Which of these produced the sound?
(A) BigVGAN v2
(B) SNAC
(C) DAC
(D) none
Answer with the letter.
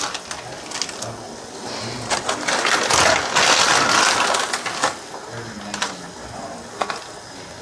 D